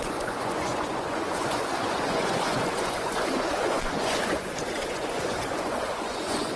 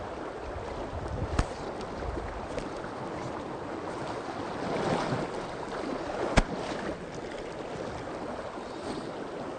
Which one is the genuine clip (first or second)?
second